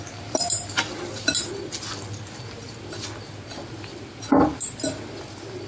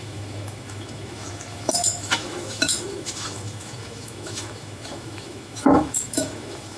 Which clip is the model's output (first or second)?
second